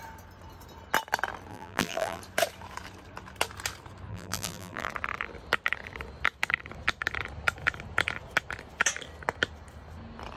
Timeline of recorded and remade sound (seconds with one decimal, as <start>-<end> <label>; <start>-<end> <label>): 0.0-1.5 recorded; 1.5-2.2 remade; 2.2-4.1 recorded; 4.1-4.9 remade; 4.9-10.4 recorded